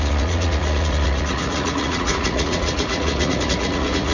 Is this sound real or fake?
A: fake